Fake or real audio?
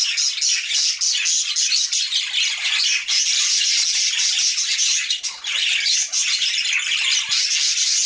real